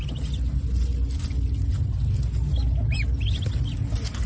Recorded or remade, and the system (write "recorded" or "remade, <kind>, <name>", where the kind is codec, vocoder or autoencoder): recorded